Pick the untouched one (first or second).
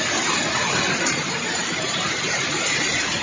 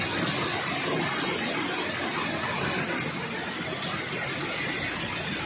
second